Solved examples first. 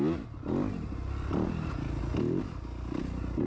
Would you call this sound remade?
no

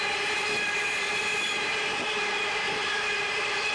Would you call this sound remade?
no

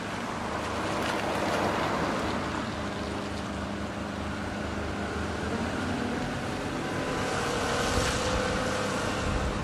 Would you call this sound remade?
no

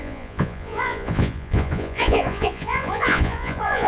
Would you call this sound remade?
yes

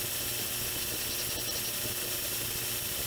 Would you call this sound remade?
yes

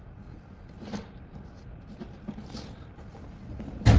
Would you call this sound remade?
no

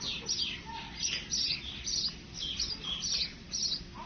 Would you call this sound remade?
no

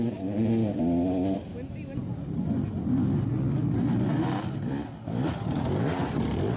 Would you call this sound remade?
no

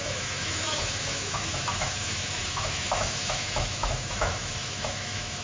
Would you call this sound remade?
yes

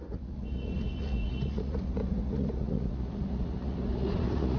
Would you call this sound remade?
yes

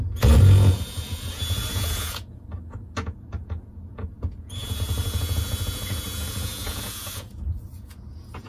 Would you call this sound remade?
yes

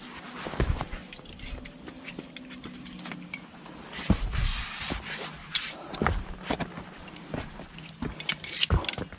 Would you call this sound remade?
no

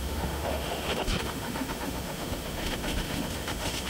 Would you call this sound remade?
yes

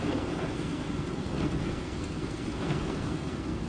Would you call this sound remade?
yes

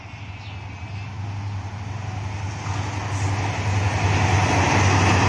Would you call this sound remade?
no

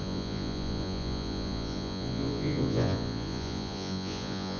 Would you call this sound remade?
yes